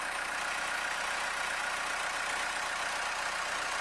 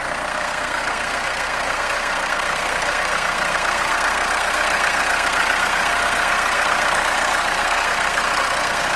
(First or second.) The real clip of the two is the first